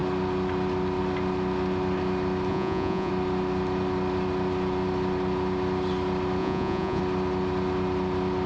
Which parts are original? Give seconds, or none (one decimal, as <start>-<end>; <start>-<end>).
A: 0.0-2.5; 3.1-6.4; 7.0-8.5